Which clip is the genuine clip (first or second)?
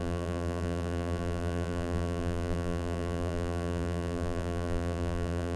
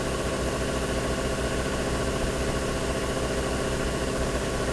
second